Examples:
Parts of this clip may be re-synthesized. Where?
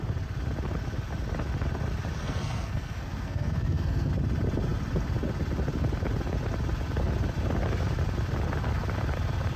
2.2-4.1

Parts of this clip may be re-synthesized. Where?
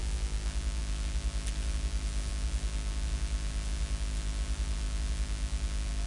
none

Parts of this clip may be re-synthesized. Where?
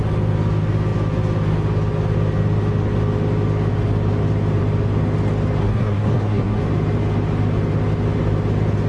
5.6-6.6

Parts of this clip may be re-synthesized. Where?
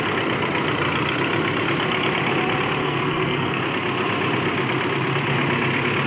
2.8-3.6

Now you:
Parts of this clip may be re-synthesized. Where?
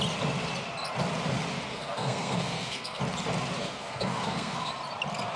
1.7-3.0; 3.6-4.7